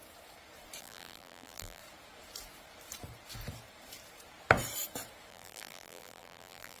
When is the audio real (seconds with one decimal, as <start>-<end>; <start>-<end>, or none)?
0.0-0.8; 1.8-5.3